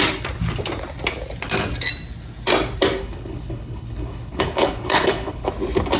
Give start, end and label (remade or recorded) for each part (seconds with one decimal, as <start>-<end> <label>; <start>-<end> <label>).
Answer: 0.0-3.0 recorded; 3.0-5.5 remade; 5.5-6.0 recorded